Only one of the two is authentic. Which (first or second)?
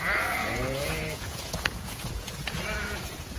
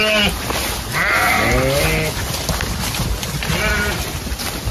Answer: second